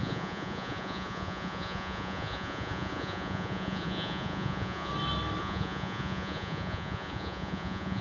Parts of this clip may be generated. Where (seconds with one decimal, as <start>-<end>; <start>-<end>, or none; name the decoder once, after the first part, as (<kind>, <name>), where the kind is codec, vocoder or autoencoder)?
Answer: 0.0-4.9 (vocoder, Vocos); 5.4-8.0